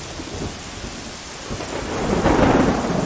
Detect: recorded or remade recorded